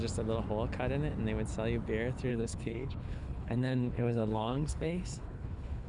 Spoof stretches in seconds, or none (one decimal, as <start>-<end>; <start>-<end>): 2.3-5.9